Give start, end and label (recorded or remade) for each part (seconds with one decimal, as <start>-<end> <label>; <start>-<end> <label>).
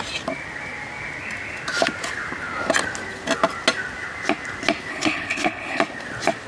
0.0-4.9 recorded; 4.9-5.8 remade; 5.8-6.5 recorded